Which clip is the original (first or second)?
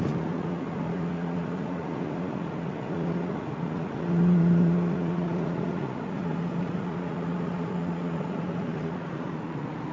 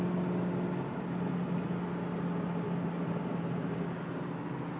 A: second